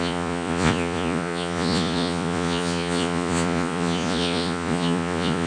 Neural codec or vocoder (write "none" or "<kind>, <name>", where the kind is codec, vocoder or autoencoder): vocoder, Vocos